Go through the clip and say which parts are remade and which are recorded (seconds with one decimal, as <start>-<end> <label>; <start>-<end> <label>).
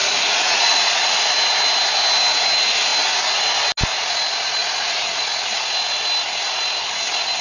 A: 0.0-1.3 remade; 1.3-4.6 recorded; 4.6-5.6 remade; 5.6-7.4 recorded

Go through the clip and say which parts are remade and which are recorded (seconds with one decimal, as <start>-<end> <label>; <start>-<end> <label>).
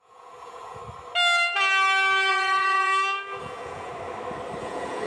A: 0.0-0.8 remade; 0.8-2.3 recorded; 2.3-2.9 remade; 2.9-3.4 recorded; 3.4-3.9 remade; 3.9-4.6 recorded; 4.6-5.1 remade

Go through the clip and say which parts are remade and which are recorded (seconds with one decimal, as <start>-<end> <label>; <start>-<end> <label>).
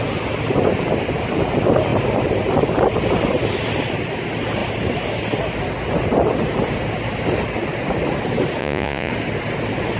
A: 0.0-8.6 recorded; 8.6-9.1 remade; 9.1-10.0 recorded